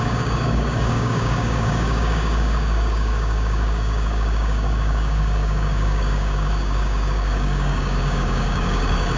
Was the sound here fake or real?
fake